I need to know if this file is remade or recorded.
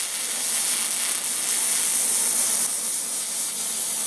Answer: recorded